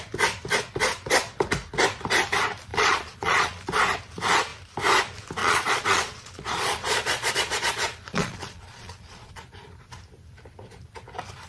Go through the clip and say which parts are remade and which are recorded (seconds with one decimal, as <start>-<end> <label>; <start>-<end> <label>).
0.0-2.7 recorded; 2.7-3.6 remade; 3.6-5.4 recorded; 5.4-9.3 remade; 9.3-11.5 recorded